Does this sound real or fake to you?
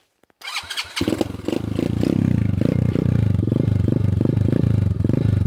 real